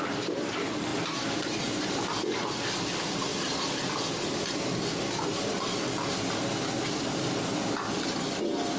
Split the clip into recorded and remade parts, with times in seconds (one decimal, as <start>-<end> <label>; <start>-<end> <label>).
0.0-8.8 recorded